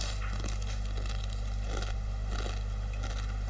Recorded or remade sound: recorded